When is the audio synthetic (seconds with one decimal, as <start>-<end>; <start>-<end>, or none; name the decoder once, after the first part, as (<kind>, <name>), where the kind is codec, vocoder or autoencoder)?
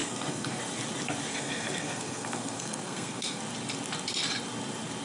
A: 0.0-0.6 (codec, SNAC); 1.3-3.4